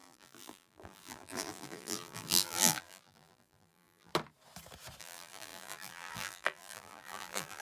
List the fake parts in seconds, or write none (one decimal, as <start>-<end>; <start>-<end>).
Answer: 0.0-4.1; 5.0-7.6